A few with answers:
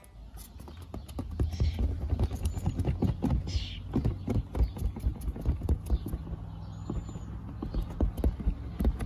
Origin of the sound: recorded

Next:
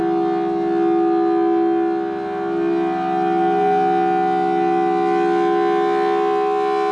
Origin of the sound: recorded